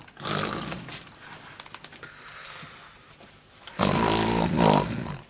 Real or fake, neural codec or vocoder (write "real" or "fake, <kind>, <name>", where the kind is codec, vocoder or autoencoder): real